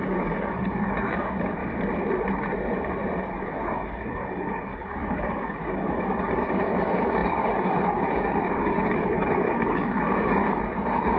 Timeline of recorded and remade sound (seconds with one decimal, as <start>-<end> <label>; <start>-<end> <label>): 0.0-1.6 remade; 1.6-3.3 recorded; 3.3-11.2 remade